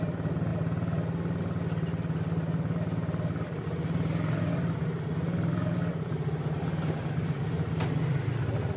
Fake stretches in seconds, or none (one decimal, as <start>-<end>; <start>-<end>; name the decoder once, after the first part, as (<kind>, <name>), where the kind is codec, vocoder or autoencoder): none